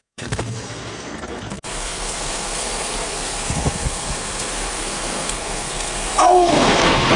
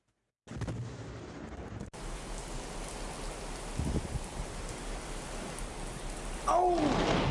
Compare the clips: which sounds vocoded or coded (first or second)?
first